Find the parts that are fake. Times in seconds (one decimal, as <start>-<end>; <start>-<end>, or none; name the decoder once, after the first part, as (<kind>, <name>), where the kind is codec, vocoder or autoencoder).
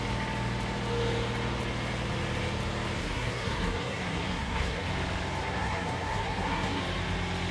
3.0-4.9 (codec, SNAC); 5.4-6.8